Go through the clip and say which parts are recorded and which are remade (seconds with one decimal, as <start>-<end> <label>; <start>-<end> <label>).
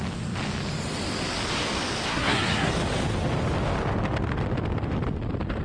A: 0.0-2.1 recorded; 2.1-2.7 remade; 2.7-5.6 recorded